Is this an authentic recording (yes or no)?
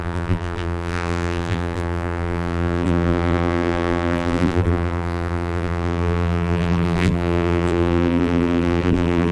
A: no